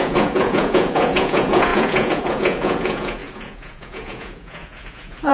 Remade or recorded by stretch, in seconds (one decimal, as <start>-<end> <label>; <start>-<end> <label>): 0.0-5.3 remade